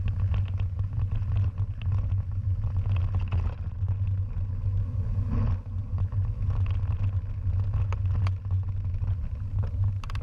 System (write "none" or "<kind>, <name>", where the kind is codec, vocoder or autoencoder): none